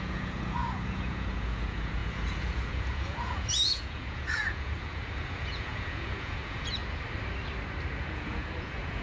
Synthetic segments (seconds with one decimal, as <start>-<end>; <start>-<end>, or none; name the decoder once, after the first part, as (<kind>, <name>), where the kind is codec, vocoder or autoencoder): 0.0-6.8 (vocoder, Vocos); 8.0-9.0